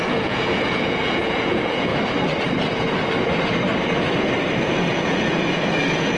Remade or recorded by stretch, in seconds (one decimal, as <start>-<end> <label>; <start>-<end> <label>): 0.0-1.9 remade; 1.9-4.6 recorded; 4.6-6.2 remade